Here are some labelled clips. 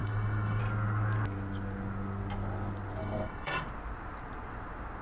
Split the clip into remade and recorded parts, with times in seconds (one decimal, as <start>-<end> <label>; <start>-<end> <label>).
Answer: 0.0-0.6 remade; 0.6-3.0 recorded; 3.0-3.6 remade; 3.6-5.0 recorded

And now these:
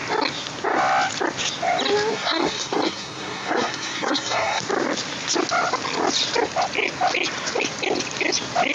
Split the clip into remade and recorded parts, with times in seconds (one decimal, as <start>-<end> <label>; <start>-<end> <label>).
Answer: 0.0-2.1 recorded; 2.1-4.6 remade; 4.6-8.7 recorded

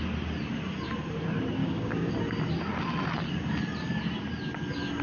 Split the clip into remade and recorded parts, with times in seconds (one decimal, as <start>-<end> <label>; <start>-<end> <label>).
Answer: 0.0-1.6 recorded; 1.6-2.1 remade; 2.1-5.0 recorded

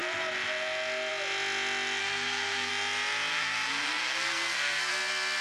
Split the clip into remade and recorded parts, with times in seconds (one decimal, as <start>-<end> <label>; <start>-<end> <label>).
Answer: 0.0-2.0 recorded; 2.0-2.7 remade; 2.7-3.3 recorded; 3.3-4.9 remade; 4.9-5.4 recorded

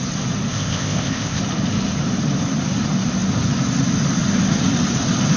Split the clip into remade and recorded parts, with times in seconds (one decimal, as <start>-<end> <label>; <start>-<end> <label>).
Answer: 0.0-0.5 recorded; 0.5-1.4 remade; 1.4-5.4 recorded